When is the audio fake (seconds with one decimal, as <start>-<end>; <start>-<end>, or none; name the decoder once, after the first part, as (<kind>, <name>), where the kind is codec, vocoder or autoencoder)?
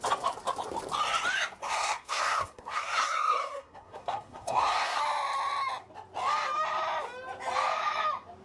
1.6-5.0 (codec, SNAC)